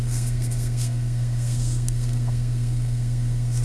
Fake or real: fake